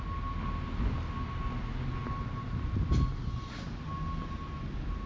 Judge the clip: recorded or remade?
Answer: recorded